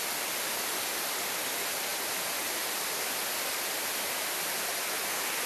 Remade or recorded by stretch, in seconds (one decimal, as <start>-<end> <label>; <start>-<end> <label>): 0.0-5.5 recorded